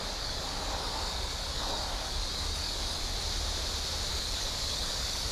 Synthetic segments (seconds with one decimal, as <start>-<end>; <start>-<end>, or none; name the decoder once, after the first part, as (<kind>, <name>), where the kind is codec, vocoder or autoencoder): 0.0-3.2 (codec, DAC); 4.1-5.3